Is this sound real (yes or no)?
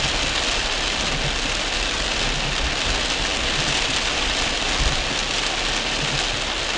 yes